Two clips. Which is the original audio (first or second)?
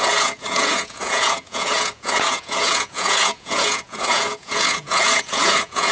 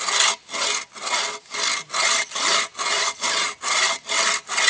second